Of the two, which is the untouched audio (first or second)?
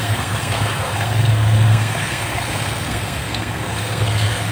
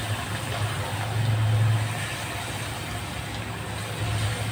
second